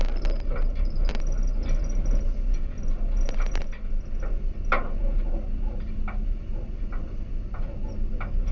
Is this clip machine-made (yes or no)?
no